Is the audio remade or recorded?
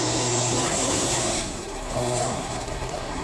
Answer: remade